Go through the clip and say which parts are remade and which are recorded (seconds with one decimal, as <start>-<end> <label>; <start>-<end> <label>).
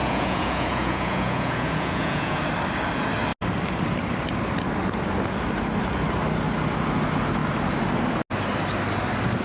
0.0-2.4 remade; 2.4-9.4 recorded